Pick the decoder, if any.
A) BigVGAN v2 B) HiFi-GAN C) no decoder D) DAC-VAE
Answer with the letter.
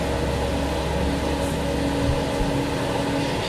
C